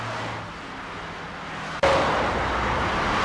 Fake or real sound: real